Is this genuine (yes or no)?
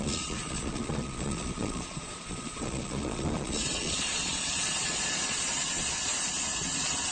no